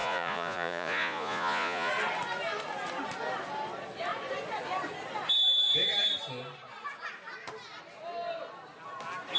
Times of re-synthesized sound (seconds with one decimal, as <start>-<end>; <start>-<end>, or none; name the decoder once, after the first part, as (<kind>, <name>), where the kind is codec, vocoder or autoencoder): 0.0-1.9 (vocoder, Vocos)